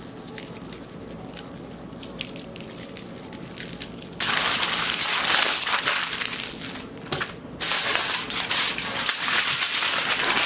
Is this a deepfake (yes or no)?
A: no